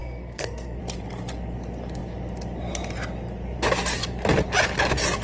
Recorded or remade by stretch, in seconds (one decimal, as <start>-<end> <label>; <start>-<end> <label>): 0.0-0.8 remade; 0.8-5.2 recorded